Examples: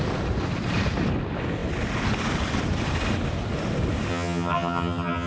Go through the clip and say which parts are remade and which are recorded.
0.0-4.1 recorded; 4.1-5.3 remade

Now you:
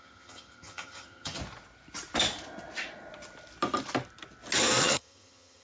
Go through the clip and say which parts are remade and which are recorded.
0.0-1.4 remade; 1.4-4.8 recorded; 4.8-5.6 remade

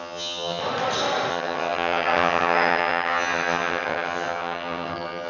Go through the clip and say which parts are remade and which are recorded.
0.0-0.6 remade; 0.6-1.3 recorded; 1.3-5.3 remade

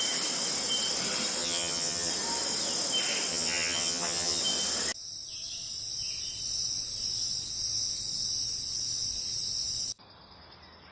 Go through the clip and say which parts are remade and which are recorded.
0.0-1.4 recorded; 1.4-2.1 remade; 2.1-3.3 recorded; 3.3-4.4 remade; 4.4-10.9 recorded

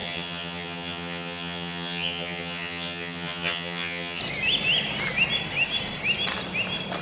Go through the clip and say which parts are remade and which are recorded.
0.0-4.2 remade; 4.2-7.0 recorded

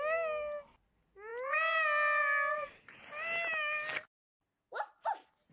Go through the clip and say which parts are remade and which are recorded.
0.0-5.5 recorded

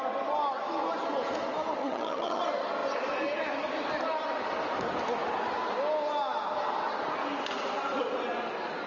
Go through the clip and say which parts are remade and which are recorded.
0.0-1.8 recorded; 1.8-2.4 remade; 2.4-8.9 recorded